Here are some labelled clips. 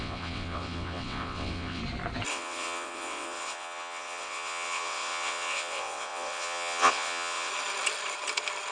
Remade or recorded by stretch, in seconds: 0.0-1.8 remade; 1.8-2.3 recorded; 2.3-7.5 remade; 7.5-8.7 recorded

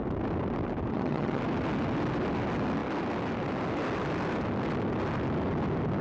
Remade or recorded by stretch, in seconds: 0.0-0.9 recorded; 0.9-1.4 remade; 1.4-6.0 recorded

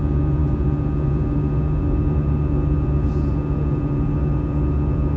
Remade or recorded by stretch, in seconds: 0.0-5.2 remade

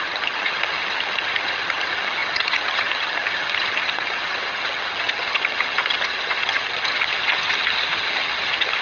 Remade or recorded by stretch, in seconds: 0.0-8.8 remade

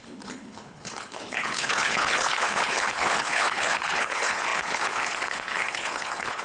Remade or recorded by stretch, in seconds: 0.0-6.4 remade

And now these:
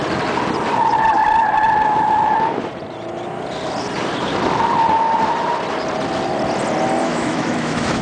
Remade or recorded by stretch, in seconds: 0.0-7.0 recorded; 7.0-8.0 remade

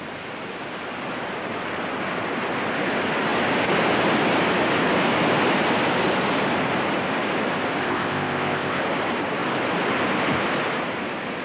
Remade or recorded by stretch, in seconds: 0.0-7.8 recorded; 7.8-8.8 remade; 8.8-11.4 recorded